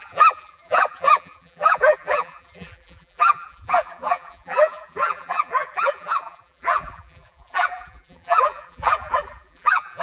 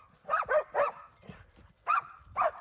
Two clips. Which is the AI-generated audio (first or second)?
first